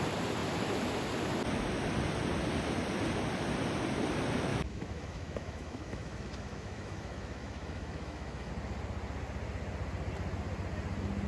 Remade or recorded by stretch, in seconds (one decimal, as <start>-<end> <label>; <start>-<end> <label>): 0.0-4.5 recorded; 4.5-8.5 remade; 8.5-11.3 recorded